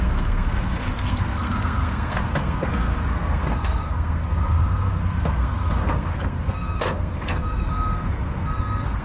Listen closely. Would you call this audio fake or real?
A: fake